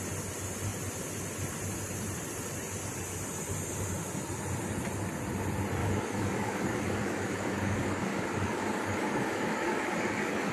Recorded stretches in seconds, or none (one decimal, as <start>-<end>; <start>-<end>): 0.0-5.8